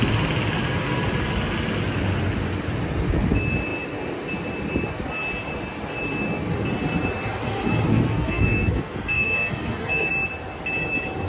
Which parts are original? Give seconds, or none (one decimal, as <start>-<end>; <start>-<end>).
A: 0.0-7.9; 10.1-11.3